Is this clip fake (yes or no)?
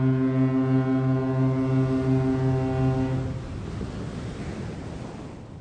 no